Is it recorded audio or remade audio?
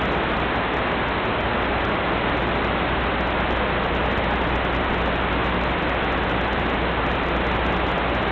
recorded